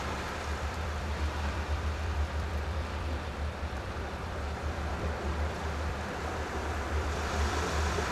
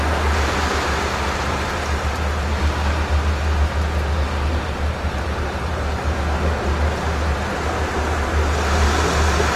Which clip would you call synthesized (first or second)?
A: first